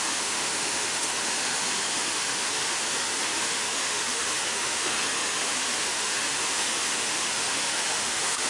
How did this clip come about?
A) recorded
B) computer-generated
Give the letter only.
B